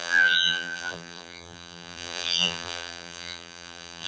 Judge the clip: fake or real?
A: fake